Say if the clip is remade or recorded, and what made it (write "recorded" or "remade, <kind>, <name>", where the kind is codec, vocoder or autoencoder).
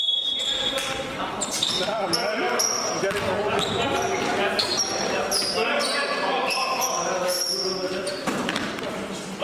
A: recorded